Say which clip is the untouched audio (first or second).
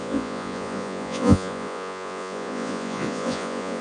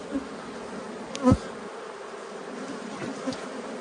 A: second